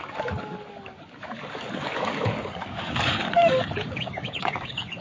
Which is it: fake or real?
fake